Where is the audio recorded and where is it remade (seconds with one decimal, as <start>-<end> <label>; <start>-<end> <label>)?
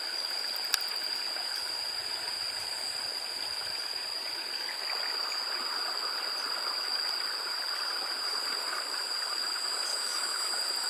0.0-9.9 recorded; 9.9-10.5 remade; 10.5-10.9 recorded